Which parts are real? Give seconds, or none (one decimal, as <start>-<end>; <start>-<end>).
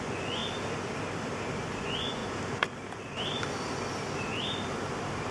0.4-1.8; 2.2-5.3